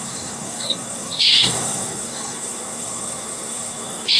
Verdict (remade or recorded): remade